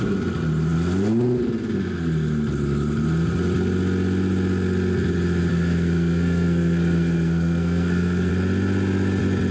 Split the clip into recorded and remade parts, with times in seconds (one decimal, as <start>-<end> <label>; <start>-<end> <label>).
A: 0.0-5.5 recorded; 5.5-8.3 remade; 8.3-9.5 recorded